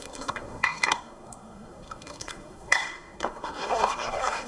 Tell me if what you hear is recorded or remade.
remade